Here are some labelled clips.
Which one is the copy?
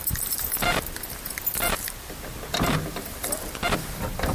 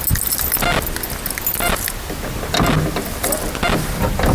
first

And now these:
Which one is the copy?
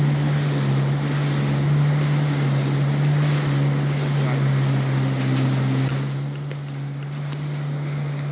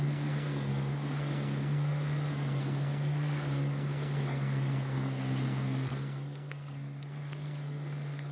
second